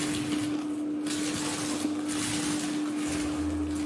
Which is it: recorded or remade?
recorded